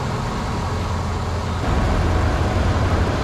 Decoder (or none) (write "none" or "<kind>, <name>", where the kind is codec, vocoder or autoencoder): none